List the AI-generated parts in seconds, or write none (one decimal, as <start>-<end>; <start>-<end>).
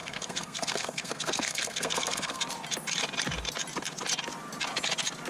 0.0-2.4